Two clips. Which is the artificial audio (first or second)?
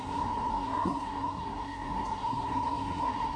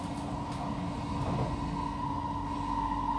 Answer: first